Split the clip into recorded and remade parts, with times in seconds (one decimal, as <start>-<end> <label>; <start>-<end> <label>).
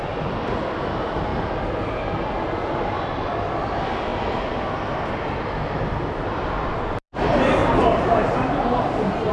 0.0-1.3 remade; 1.3-3.3 recorded; 3.3-4.1 remade; 4.1-5.0 recorded; 5.0-7.6 remade; 7.6-9.3 recorded